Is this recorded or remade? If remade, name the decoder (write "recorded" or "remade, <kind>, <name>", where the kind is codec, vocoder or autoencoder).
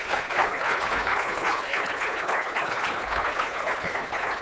remade, codec, HILCodec